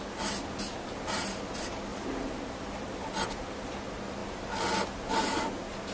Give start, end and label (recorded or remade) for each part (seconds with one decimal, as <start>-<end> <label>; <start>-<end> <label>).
0.0-5.9 recorded